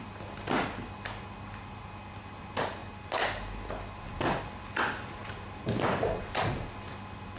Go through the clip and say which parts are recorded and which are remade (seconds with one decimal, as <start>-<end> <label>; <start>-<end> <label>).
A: 0.0-7.4 recorded